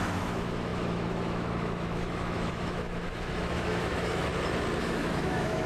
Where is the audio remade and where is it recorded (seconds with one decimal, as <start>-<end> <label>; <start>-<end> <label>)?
0.0-4.3 remade; 4.3-4.8 recorded; 4.8-5.7 remade